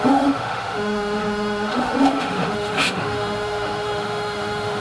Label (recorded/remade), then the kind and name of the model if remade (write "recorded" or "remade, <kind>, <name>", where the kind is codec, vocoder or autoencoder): remade, autoencoder, DAC-VAE